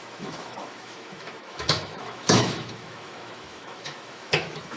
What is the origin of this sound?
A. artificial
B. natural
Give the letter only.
A